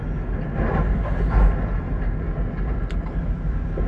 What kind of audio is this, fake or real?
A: real